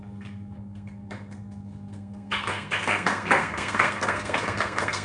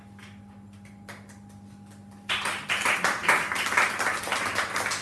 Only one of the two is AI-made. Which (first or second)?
first